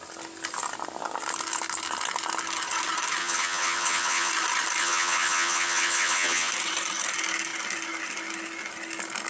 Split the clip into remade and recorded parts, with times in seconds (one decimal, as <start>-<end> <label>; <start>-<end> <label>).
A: 0.0-3.2 recorded; 3.2-4.3 remade; 4.3-4.8 recorded; 4.8-6.5 remade; 6.5-9.3 recorded